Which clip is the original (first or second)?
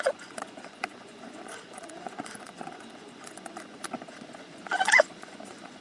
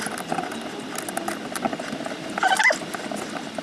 second